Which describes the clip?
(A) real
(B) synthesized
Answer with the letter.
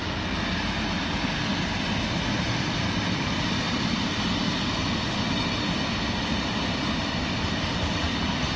A